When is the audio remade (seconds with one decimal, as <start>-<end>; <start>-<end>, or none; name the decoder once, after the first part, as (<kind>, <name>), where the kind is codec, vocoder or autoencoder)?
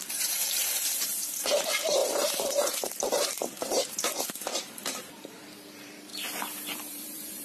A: 0.0-6.1 (vocoder, BigVGAN v2); 6.9-7.4